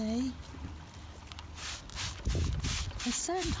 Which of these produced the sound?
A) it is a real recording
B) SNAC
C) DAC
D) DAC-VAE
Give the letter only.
A